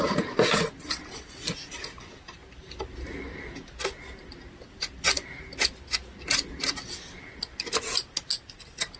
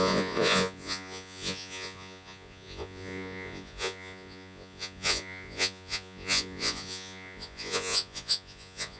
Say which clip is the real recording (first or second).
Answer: first